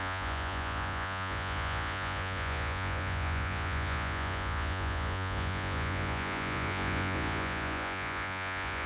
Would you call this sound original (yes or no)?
no